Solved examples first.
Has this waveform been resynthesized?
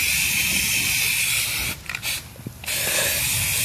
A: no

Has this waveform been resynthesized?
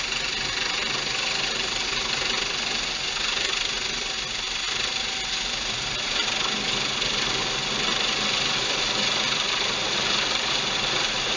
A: no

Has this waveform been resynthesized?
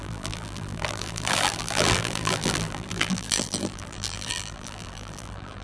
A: yes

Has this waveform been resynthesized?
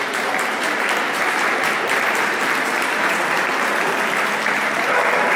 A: yes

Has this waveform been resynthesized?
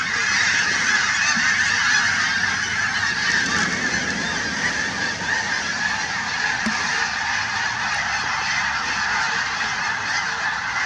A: yes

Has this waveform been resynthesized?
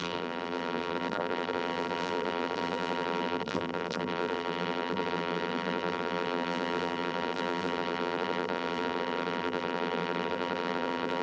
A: yes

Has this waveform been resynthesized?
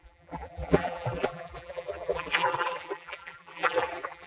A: yes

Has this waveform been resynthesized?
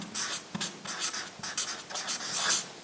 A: no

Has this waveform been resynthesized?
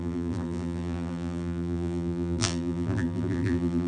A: yes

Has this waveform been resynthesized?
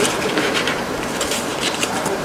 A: yes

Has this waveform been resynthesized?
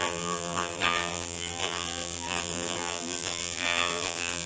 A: yes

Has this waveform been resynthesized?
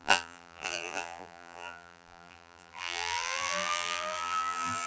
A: yes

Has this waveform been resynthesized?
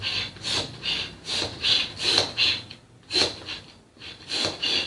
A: no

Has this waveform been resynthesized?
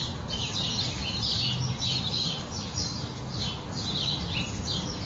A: no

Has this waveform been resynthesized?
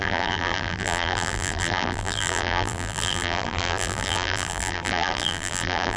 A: yes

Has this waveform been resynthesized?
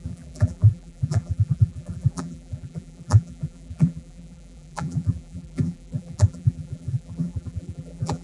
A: yes